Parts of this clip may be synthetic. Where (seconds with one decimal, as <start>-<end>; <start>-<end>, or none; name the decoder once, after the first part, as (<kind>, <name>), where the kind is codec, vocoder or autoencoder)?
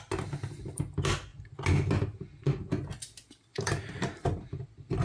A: 3.5-5.0 (vocoder, BigVGAN v2)